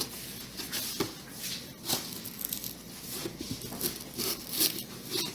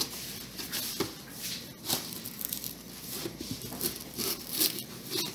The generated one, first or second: second